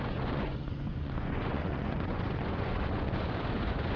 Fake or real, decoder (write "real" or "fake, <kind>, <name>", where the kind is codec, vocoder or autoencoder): fake, vocoder, Vocos